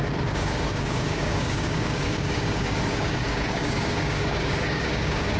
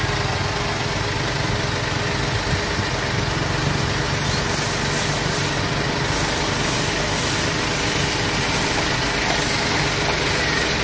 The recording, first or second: second